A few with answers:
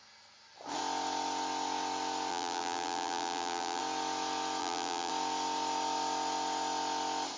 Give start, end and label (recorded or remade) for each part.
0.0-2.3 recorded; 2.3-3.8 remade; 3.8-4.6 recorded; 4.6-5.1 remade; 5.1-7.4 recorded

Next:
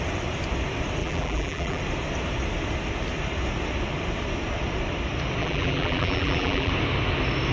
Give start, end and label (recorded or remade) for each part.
0.0-1.0 recorded; 1.0-1.8 remade; 1.8-5.4 recorded; 5.4-6.7 remade; 6.7-7.5 recorded

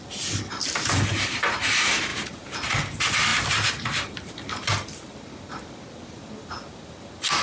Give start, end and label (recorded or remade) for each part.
0.0-2.1 recorded; 2.1-2.7 remade; 2.7-3.3 recorded; 3.3-4.3 remade; 4.3-7.4 recorded

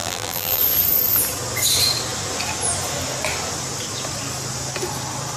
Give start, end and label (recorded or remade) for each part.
0.0-0.6 remade; 0.6-5.4 recorded

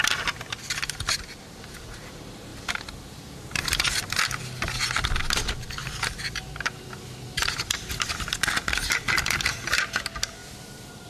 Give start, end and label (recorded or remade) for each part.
0.0-2.5 recorded; 2.5-4.0 remade; 4.0-10.4 recorded; 10.4-11.1 remade

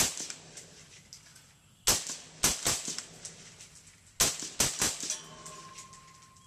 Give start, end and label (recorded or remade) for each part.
0.0-6.5 recorded

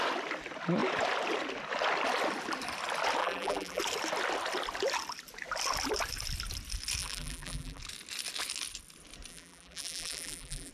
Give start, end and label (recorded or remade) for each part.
0.0-3.2 recorded; 3.2-3.8 remade; 3.8-7.0 recorded; 7.0-7.8 remade; 7.8-9.3 recorded; 9.3-10.7 remade